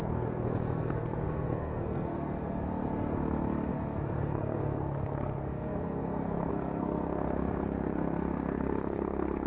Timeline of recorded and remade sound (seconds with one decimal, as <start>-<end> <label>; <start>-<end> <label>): 0.0-9.5 remade